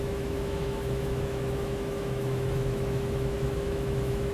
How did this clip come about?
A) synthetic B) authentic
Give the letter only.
A